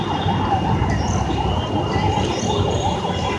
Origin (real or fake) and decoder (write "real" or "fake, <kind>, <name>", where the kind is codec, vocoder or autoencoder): real